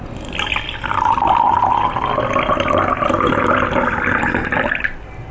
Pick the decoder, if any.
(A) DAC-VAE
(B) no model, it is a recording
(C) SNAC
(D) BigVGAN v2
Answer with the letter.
B